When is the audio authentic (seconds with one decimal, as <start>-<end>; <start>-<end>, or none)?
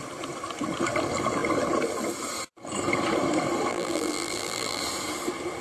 0.0-3.7; 4.8-5.6